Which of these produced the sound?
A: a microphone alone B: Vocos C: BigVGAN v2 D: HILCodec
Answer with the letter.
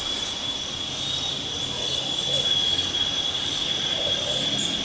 A